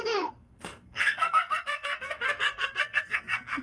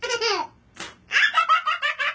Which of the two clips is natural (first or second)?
second